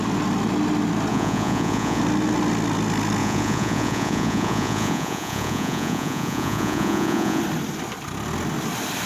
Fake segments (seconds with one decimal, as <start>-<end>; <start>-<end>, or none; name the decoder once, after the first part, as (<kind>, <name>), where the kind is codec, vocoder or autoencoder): 1.1-2.0 (vocoder, Vocos); 3.2-7.4